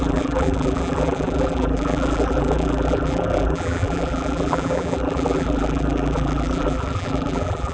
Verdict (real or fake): fake